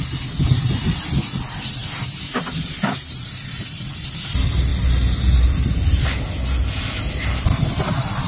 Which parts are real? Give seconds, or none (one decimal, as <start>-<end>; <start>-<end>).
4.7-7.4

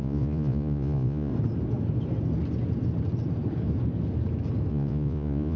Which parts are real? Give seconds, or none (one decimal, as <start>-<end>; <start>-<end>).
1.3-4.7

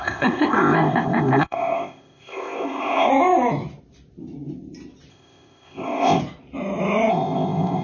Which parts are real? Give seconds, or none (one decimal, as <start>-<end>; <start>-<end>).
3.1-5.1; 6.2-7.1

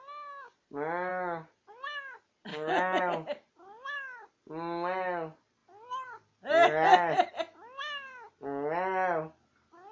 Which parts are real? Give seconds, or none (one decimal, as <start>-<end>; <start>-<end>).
0.0-2.5; 3.0-9.9

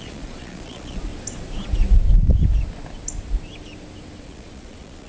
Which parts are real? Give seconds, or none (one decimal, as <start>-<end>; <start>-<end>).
1.1-4.2

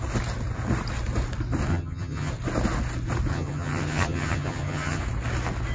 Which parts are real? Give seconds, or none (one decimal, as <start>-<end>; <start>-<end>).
0.0-1.7; 2.3-3.3; 5.0-5.7